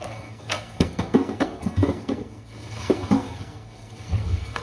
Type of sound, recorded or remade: remade